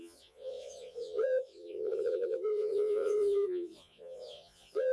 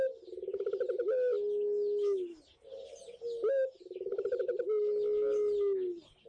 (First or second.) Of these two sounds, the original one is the second